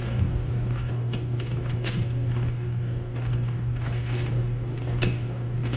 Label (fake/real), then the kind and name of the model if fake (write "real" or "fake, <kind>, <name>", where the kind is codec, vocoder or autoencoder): fake, codec, DAC